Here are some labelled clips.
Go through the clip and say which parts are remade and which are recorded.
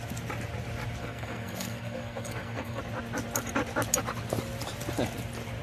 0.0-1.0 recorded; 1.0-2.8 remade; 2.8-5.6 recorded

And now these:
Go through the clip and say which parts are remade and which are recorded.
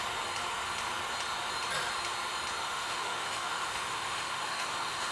0.0-2.6 recorded; 2.6-5.1 remade